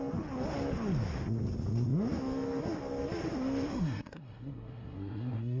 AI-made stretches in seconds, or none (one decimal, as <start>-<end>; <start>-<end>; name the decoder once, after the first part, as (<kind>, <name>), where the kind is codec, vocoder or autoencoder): 3.7-5.6 (codec, SNAC)